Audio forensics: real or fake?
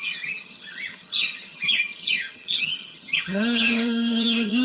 fake